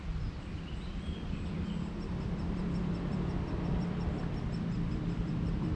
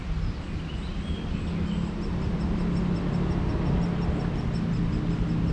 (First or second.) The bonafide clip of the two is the second